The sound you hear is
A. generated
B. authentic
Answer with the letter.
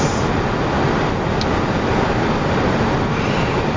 B